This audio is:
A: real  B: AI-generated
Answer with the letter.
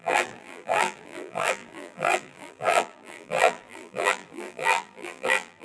B